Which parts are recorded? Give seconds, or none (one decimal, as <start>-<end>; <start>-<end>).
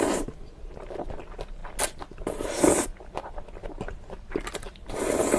0.0-5.4